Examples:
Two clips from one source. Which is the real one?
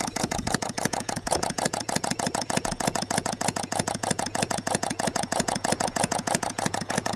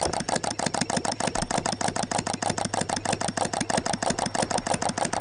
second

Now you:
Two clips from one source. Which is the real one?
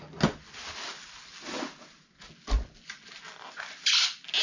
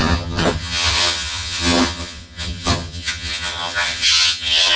first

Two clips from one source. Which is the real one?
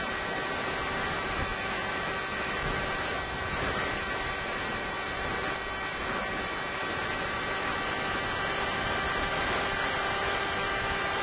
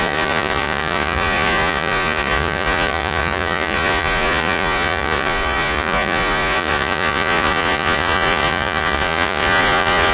first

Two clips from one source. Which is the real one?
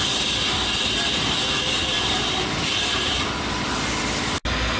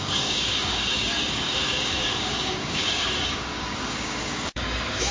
first